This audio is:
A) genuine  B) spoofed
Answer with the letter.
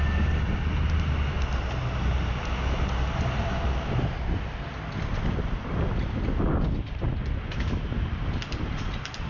A